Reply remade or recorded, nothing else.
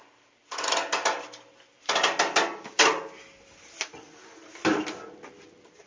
recorded